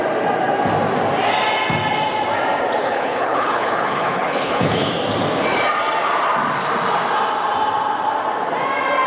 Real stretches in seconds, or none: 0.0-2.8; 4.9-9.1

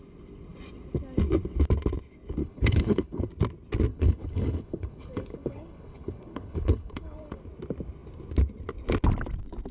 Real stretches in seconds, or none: 0.0-2.4; 3.3-3.9; 7.4-9.7

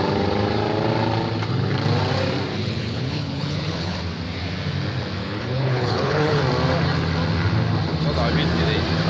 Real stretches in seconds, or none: 0.0-2.6; 4.0-5.2; 6.4-9.1

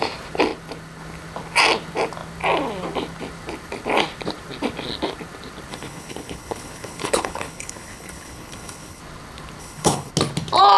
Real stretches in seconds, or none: 0.0-5.7; 9.0-9.6; 10.1-10.8